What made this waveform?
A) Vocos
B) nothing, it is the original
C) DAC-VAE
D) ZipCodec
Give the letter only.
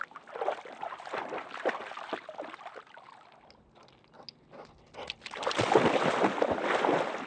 B